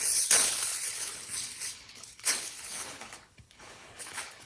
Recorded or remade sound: remade